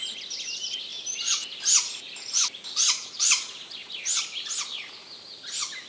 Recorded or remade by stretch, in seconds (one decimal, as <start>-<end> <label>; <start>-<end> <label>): 0.0-5.9 recorded